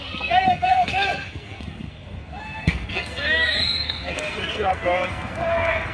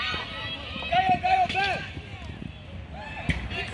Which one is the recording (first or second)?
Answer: second